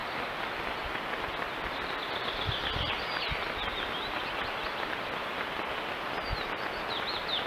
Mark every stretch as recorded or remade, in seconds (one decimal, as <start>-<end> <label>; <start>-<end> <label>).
0.0-0.9 remade; 0.9-7.5 recorded